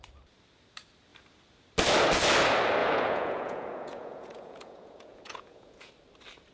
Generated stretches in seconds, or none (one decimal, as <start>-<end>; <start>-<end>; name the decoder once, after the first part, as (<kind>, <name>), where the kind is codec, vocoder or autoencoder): 2.8-5.9 (vocoder, Vocos)